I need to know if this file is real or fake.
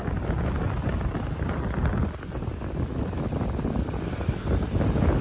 real